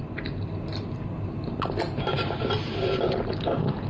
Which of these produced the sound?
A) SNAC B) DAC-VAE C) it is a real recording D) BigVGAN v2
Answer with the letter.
C